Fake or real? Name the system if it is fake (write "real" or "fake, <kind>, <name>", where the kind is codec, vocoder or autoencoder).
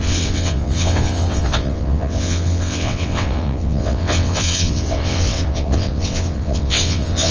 fake, vocoder, WaveNeXt